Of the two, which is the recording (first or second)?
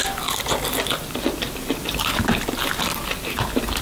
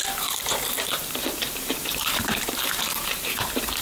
first